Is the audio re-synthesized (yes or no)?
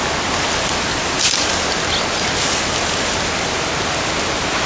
no